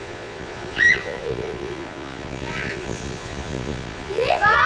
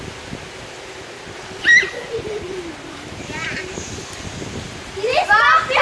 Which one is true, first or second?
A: second